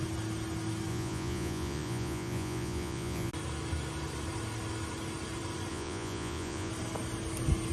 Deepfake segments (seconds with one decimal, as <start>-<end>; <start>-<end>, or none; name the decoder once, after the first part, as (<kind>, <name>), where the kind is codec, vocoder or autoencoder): 0.9-3.3 (vocoder, Vocos); 5.7-6.7